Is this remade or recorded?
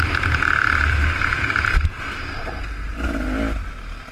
recorded